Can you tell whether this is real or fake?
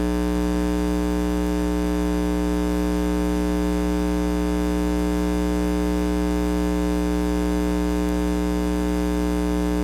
real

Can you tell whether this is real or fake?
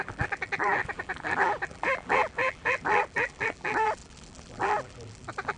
fake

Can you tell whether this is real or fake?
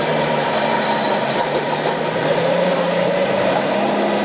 fake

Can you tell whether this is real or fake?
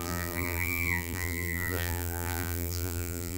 fake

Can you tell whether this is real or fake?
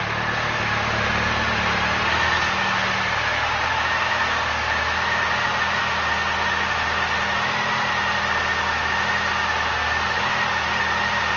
real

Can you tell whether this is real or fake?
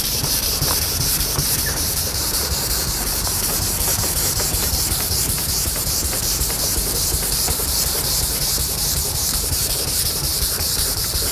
fake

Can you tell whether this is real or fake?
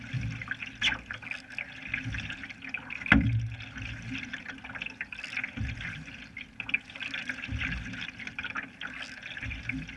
real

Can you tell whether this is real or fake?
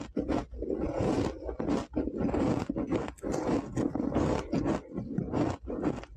real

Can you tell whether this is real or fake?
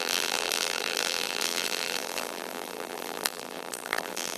fake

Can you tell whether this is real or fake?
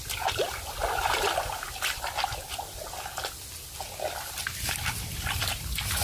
real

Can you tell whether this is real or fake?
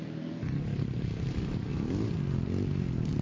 real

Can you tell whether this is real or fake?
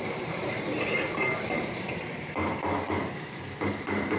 fake